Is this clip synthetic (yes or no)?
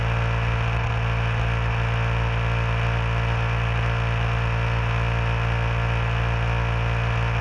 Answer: no